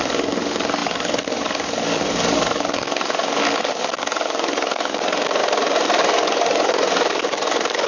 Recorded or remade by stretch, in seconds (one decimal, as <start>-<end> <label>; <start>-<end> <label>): 0.0-5.4 remade; 5.4-6.0 recorded; 6.0-7.9 remade